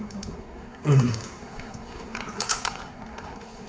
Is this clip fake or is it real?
fake